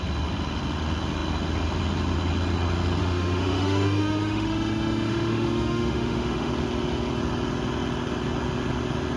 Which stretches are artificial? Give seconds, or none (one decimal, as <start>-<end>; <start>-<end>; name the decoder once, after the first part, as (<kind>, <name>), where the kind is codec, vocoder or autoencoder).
3.0-6.5 (autoencoder, DAC-VAE)